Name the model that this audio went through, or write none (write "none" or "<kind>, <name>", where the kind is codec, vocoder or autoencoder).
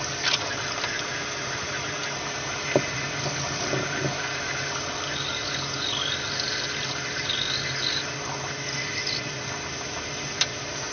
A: none